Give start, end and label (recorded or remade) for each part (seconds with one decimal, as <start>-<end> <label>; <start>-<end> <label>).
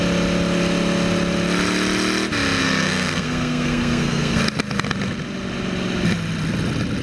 0.0-2.6 recorded; 2.6-4.4 remade; 4.4-7.0 recorded